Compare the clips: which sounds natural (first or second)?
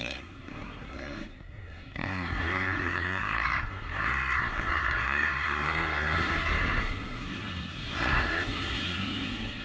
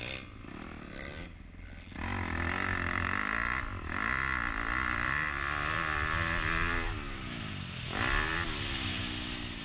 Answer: second